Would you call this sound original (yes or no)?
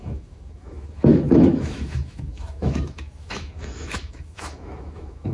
no